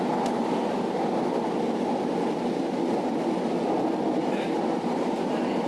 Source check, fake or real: real